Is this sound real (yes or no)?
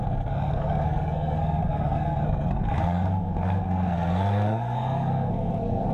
no